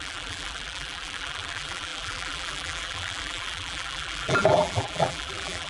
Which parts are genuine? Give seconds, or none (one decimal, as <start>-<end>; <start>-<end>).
none